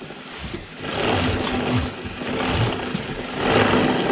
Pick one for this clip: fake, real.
real